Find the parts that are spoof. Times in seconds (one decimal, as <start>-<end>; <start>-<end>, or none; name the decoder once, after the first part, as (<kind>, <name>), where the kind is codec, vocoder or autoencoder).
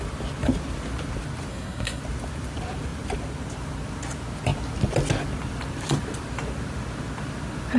1.5-2.0 (codec, SNAC)